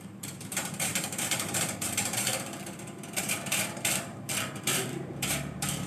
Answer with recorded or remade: remade